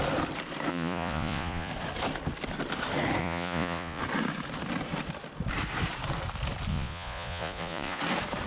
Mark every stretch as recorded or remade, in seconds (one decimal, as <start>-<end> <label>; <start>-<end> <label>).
0.0-0.7 recorded; 0.7-1.7 remade; 1.7-3.2 recorded; 3.2-4.0 remade; 4.0-6.7 recorded; 6.7-8.0 remade; 8.0-8.5 recorded